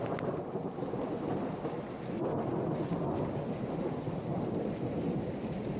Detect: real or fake real